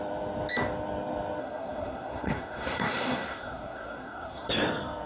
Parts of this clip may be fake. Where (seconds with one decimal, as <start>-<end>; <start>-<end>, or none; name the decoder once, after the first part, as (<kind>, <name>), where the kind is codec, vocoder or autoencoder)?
1.4-4.5 (codec, SNAC)